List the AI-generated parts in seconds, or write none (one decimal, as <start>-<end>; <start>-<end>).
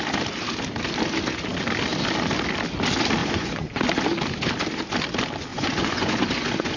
3.2-3.8; 5.5-6.8